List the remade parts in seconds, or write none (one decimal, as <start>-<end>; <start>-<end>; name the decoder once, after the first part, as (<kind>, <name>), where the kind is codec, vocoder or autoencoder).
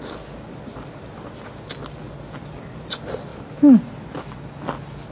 none